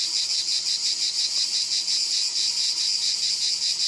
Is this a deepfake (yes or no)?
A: no